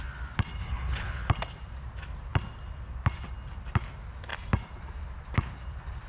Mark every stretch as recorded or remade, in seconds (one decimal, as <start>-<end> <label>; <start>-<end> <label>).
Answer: 0.0-0.6 recorded; 0.6-1.3 remade; 1.3-6.1 recorded